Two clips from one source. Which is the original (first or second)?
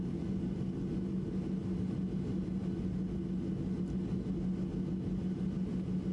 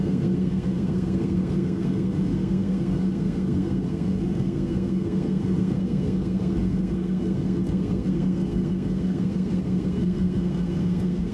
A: first